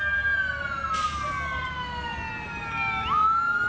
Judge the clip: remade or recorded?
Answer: recorded